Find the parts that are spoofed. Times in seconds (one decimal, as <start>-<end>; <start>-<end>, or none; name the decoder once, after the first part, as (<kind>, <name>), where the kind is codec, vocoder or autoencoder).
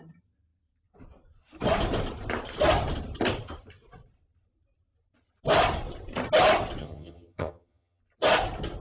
6.8-8.0 (vocoder, HiFi-GAN)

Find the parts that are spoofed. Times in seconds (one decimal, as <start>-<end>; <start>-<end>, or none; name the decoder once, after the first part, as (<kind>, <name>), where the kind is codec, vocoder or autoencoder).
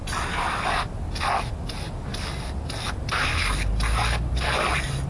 none